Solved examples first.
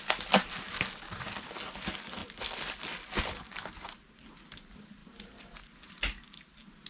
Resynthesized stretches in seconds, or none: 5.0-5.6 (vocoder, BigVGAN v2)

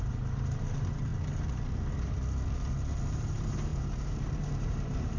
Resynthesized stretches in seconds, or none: 0.0-1.1 (vocoder, BigVGAN v2); 3.1-5.2

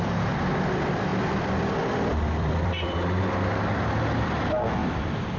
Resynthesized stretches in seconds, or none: 1.1-4.3 (vocoder, BigVGAN v2); 4.8-5.4